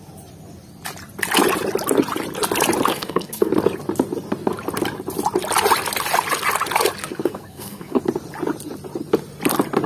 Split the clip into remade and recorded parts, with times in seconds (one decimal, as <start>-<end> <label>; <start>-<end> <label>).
0.0-2.9 recorded; 2.9-3.5 remade; 3.5-7.0 recorded; 7.0-8.0 remade; 8.0-9.9 recorded